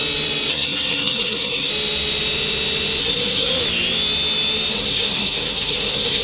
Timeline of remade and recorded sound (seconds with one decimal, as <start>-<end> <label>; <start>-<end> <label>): 0.0-0.5 recorded; 0.5-1.7 remade; 1.7-3.0 recorded; 3.0-3.5 remade; 3.5-4.7 recorded; 4.7-6.2 remade